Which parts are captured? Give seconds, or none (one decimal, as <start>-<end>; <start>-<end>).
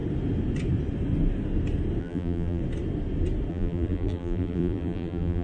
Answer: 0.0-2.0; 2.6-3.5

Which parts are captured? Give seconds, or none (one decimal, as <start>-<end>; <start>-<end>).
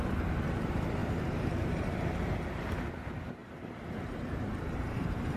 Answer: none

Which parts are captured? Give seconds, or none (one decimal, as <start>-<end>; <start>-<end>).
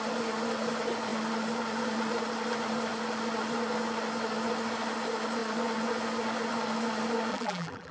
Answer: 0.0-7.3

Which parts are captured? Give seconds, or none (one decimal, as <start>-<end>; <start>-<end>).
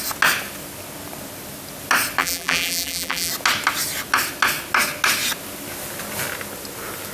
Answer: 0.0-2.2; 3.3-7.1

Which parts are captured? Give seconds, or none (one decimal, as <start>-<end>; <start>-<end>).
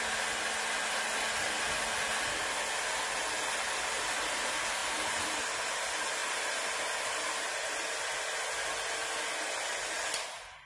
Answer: 0.0-4.8; 5.4-6.2; 8.7-10.7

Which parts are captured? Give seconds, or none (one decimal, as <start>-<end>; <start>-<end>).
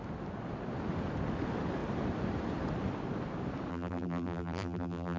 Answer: 0.0-3.7